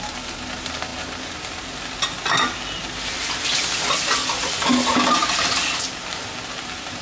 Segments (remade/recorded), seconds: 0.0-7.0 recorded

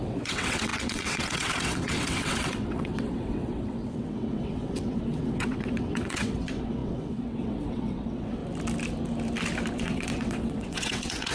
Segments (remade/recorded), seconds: 0.0-8.4 remade; 8.4-9.7 recorded; 9.7-11.3 remade

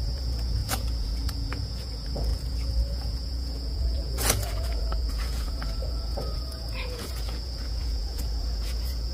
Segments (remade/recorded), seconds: 0.0-9.1 remade

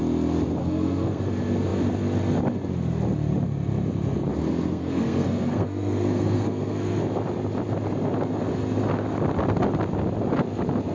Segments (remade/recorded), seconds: 0.0-0.6 recorded; 0.6-1.2 remade; 1.2-4.7 recorded; 4.7-7.0 remade; 7.0-10.9 recorded

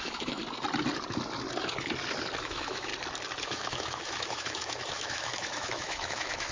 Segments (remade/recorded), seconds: 0.0-0.4 remade; 0.4-2.4 recorded; 2.4-2.9 remade; 2.9-3.4 recorded; 3.4-6.5 remade

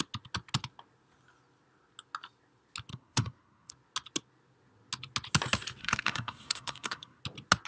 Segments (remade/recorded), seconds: 0.0-2.9 recorded; 2.9-3.7 remade; 3.7-5.8 recorded; 5.8-7.2 remade; 7.2-7.7 recorded

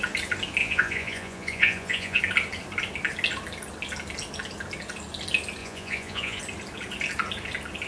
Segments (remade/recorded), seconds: 0.0-0.6 recorded; 0.6-2.2 remade; 2.2-5.6 recorded; 5.6-6.4 remade; 6.4-7.9 recorded

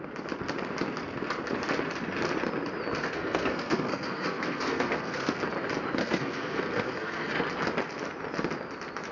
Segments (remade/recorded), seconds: 0.0-3.0 recorded; 3.0-5.4 remade; 5.4-6.0 recorded; 6.0-7.3 remade; 7.3-9.1 recorded